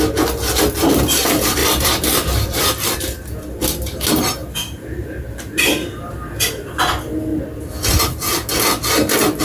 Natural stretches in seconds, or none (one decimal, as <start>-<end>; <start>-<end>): 0.0-1.6; 3.0-4.4; 6.5-9.4